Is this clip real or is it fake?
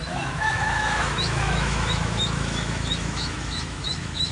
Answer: fake